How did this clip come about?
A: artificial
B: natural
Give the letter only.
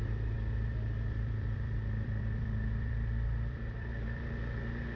A